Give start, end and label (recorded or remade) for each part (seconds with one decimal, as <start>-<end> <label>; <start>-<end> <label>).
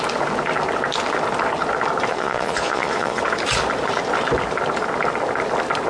0.0-2.1 recorded; 2.1-3.2 remade; 3.2-5.9 recorded